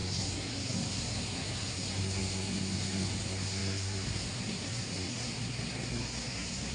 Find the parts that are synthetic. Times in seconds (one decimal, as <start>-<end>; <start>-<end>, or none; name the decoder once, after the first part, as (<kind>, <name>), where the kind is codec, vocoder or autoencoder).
0.0-6.7 (codec, SNAC)

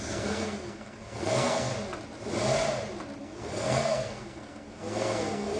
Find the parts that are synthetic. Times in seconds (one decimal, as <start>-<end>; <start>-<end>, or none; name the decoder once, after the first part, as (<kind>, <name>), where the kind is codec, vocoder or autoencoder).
0.0-1.7 (codec, SNAC); 3.2-5.6

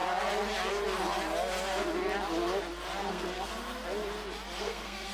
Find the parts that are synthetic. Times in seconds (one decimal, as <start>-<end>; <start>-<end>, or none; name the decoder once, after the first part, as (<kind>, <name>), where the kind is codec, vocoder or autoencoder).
3.1-3.5 (codec, SNAC); 4.6-5.1